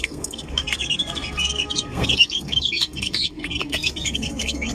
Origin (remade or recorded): remade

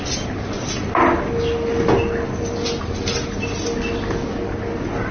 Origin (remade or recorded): recorded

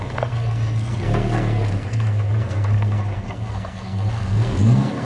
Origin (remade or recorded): remade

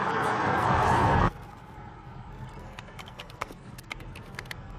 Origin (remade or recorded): remade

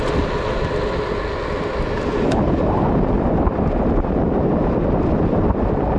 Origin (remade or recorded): recorded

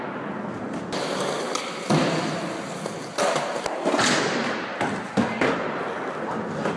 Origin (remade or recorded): recorded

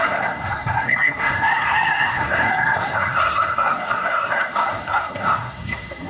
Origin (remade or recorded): remade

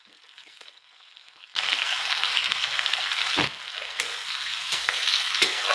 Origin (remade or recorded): remade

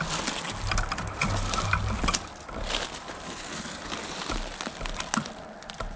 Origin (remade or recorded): recorded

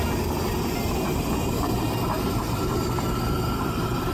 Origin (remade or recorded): recorded